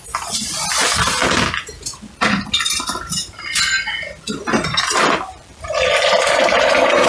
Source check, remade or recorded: recorded